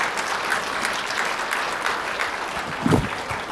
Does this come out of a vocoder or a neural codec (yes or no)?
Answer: no